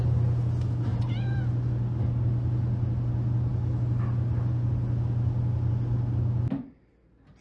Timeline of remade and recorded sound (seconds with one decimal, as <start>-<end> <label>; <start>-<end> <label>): 0.0-0.9 recorded; 0.9-1.7 remade; 1.7-7.4 recorded